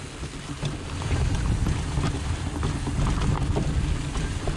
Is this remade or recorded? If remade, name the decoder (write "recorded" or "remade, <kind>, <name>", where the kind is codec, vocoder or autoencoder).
recorded